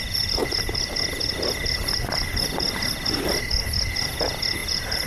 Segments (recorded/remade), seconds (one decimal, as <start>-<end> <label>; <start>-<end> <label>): 0.0-4.6 recorded; 4.6-5.1 remade